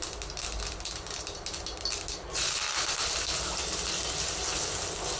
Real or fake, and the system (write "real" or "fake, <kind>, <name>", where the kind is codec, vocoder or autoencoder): real